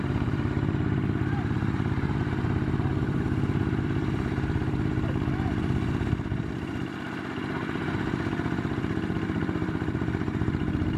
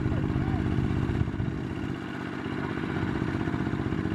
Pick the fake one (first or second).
first